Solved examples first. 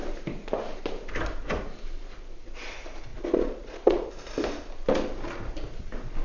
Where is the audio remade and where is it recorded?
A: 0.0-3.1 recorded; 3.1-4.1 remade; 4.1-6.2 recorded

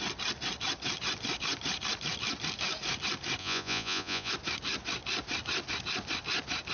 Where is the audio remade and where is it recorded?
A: 0.0-3.4 recorded; 3.4-4.3 remade; 4.3-6.7 recorded